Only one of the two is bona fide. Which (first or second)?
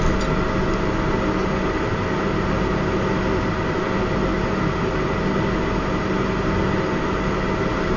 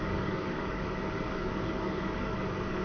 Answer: first